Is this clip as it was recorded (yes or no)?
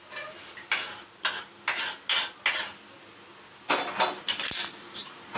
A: yes